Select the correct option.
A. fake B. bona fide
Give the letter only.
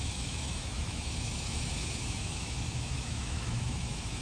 A